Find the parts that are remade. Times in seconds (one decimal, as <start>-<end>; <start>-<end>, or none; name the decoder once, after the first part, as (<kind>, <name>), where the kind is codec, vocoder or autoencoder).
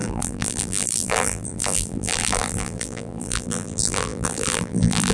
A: 0.0-5.1 (vocoder, BigVGAN v2)